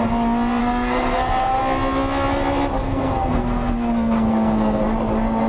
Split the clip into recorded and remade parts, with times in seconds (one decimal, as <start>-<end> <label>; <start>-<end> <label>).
0.0-0.6 recorded; 0.6-1.6 remade; 1.6-2.8 recorded; 2.8-4.8 remade; 4.8-5.5 recorded